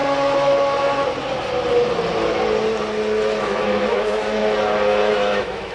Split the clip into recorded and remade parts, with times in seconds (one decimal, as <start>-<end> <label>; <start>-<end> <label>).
0.0-3.4 recorded; 3.4-4.4 remade; 4.4-5.1 recorded; 5.1-5.7 remade

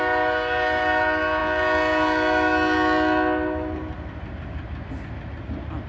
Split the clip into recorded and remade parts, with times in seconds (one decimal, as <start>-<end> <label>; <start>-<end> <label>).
0.0-5.9 recorded

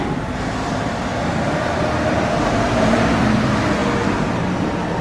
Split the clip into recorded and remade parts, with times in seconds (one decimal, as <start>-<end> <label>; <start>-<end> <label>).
0.0-1.1 remade; 1.1-1.7 recorded; 1.7-3.8 remade; 3.8-5.0 recorded

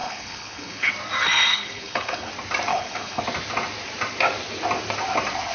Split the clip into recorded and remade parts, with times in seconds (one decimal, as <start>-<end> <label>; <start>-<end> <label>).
0.0-0.9 remade; 0.9-1.5 recorded; 1.5-2.3 remade; 2.3-2.7 recorded; 2.7-3.2 remade; 3.2-5.5 recorded

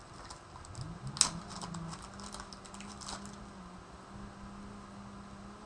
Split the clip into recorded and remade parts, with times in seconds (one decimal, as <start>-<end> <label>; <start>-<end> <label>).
0.0-5.7 recorded

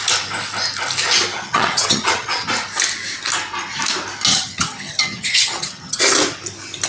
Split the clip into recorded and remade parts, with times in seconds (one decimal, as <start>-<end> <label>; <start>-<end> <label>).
0.0-1.3 recorded; 1.3-2.5 remade; 2.5-4.3 recorded; 4.3-6.0 remade; 6.0-6.9 recorded

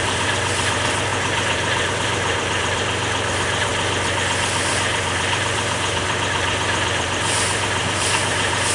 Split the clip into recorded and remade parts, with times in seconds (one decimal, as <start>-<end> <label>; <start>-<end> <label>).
0.0-3.7 remade; 3.7-4.7 recorded; 4.7-8.7 remade